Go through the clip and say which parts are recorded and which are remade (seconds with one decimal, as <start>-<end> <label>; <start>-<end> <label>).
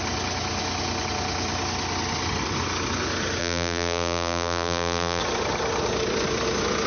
0.0-3.4 recorded; 3.4-5.2 remade; 5.2-6.9 recorded